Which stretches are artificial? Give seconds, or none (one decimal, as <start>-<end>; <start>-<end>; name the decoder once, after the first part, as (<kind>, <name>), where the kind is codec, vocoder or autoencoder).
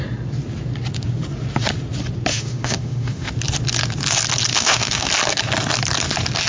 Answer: 2.3-3.3 (autoencoder, DAC-VAE); 4.5-5.1